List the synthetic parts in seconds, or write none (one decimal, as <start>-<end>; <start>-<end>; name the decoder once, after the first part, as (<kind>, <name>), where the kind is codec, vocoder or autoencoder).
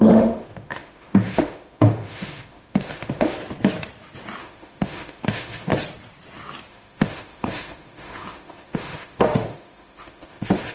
0.0-3.4 (autoencoder, DAC-VAE); 4.4-5.7; 6.7-10.7